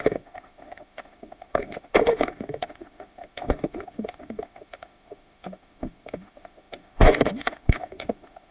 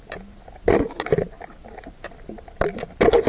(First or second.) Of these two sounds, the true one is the second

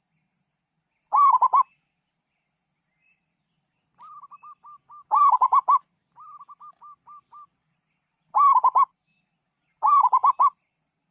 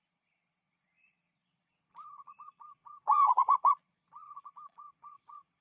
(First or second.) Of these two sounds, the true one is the first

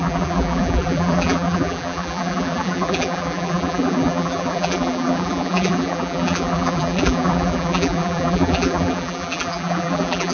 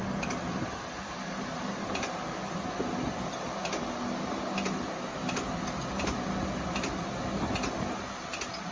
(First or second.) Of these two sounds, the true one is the second